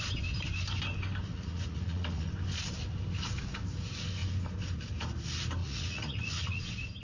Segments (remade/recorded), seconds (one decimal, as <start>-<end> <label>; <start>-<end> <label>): 0.0-1.3 recorded; 1.3-2.3 remade; 2.3-5.6 recorded; 5.6-6.6 remade; 6.6-7.0 recorded